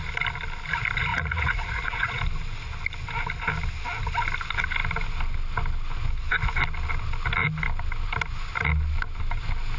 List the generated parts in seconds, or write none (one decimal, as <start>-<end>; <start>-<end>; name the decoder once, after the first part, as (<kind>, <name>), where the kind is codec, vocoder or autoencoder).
1.1-2.2 (vocoder, Vocos)